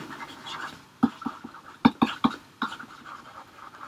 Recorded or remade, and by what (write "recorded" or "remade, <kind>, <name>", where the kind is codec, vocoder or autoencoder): recorded